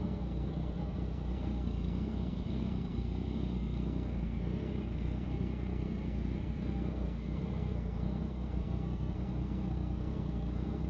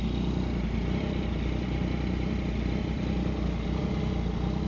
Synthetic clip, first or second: first